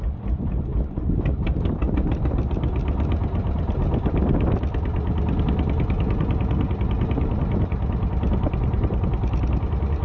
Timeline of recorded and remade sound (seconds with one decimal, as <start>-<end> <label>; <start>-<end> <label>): 0.0-10.0 recorded